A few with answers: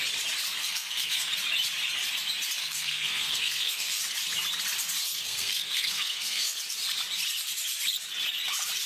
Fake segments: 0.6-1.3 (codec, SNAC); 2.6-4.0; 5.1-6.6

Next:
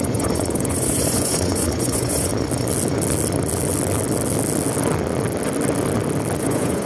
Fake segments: 0.0-2.3 (vocoder, Vocos); 6.4-6.9

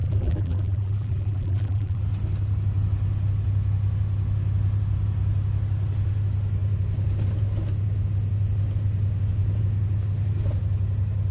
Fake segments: 0.0-2.0 (vocoder, BigVGAN v2)